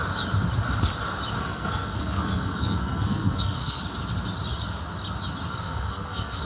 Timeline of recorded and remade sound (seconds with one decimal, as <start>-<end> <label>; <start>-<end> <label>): 0.0-1.4 recorded; 1.4-3.8 remade; 3.8-5.5 recorded; 5.5-6.5 remade